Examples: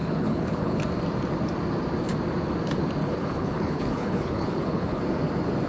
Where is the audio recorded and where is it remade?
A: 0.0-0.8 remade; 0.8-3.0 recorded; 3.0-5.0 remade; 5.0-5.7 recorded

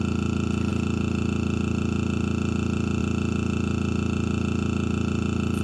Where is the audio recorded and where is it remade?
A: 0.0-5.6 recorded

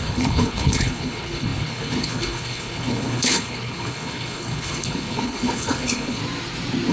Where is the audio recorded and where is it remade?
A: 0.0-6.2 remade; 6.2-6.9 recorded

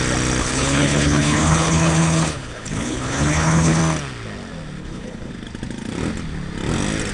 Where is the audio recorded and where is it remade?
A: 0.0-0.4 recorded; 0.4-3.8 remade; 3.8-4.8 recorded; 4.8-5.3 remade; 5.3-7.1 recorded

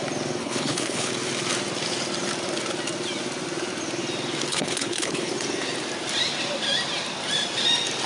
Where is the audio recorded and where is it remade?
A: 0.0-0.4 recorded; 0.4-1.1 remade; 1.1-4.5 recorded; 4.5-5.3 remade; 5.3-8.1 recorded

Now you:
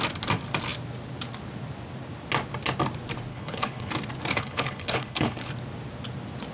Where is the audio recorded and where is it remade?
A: 0.0-3.3 recorded; 3.3-3.9 remade; 3.9-4.3 recorded; 4.3-5.5 remade; 5.5-6.5 recorded